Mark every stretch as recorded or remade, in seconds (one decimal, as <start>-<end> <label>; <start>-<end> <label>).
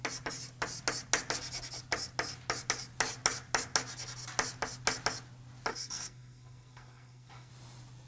0.0-5.7 recorded; 5.7-7.5 remade; 7.5-8.1 recorded